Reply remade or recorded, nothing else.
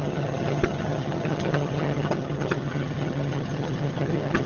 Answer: remade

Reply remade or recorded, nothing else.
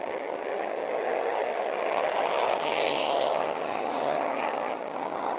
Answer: remade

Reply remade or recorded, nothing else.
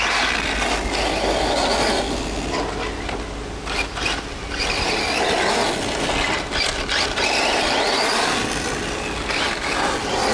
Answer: recorded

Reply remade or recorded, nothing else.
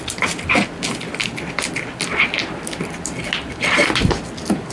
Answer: recorded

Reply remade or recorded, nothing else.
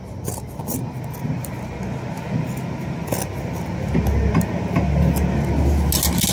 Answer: recorded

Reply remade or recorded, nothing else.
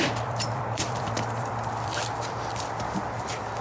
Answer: remade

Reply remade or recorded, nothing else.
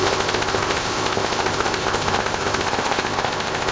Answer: remade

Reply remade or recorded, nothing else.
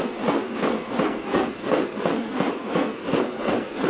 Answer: remade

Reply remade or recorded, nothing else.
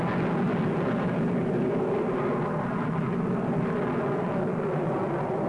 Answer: recorded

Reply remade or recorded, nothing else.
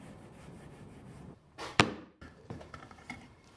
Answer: remade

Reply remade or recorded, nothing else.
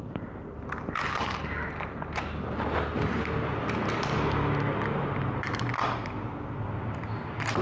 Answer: recorded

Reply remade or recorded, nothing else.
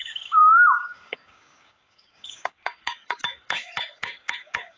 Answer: remade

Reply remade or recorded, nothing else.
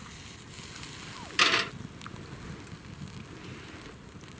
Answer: recorded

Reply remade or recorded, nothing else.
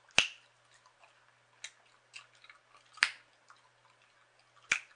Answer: recorded